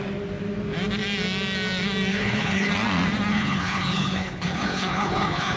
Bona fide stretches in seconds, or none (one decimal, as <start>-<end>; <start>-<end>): 0.0-2.1; 2.7-3.3